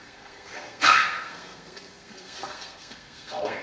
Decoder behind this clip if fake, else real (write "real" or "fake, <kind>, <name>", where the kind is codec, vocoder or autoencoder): fake, codec, SNAC